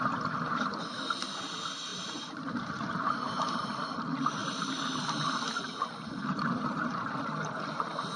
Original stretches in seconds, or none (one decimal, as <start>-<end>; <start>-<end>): 0.0-1.9; 2.9-4.4; 5.0-6.2; 6.8-8.2

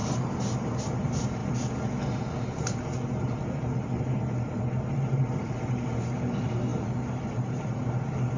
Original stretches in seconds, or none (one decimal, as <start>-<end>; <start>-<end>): 1.4-3.5

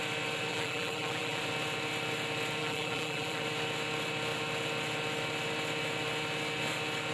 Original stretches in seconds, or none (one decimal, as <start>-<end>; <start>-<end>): 0.0-0.5; 1.4-2.6; 3.4-7.1